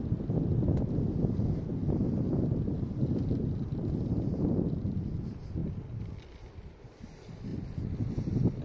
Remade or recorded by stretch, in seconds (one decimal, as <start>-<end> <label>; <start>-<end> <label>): 0.0-7.5 recorded; 7.5-8.1 remade; 8.1-8.6 recorded